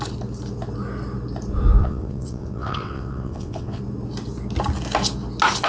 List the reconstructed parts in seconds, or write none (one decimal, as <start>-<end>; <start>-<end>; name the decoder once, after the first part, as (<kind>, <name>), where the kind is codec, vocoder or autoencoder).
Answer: 1.8-3.8 (vocoder, WaveNeXt)